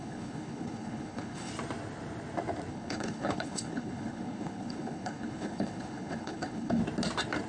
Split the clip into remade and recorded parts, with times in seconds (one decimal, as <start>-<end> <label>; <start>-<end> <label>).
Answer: 0.0-1.5 remade; 1.5-2.7 recorded; 2.7-6.8 remade; 6.8-7.5 recorded